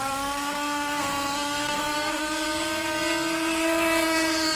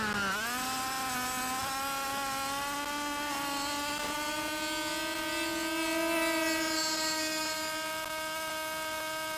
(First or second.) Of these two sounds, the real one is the second